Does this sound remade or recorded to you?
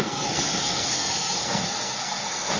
remade